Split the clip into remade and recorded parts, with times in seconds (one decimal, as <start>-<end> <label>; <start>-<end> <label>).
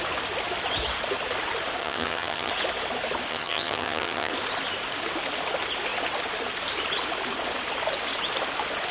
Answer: 0.0-1.8 recorded; 1.8-2.5 remade; 2.5-3.3 recorded; 3.3-4.3 remade; 4.3-8.9 recorded